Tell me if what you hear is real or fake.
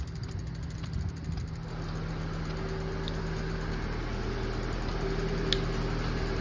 real